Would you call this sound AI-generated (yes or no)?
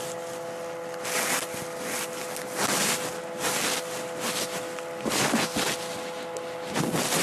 no